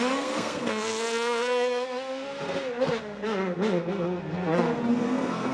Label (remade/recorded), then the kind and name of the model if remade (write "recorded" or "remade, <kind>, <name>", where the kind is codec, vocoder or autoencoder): remade, codec, SNAC